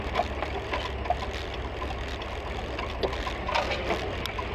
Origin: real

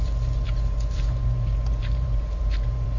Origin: fake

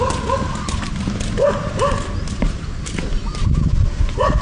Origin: real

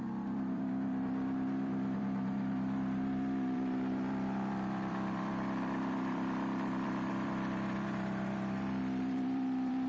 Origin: fake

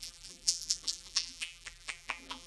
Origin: fake